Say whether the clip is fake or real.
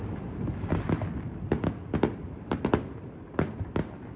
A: real